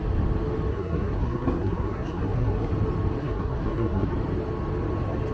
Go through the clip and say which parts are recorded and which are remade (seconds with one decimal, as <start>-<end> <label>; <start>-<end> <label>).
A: 0.0-0.7 recorded; 0.7-2.7 remade; 2.7-3.2 recorded; 3.2-4.1 remade; 4.1-5.3 recorded